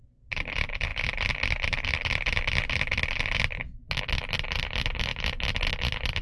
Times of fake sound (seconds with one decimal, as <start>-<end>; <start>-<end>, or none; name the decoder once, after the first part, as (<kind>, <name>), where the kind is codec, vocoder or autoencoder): none